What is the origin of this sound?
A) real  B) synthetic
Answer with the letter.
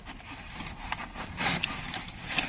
B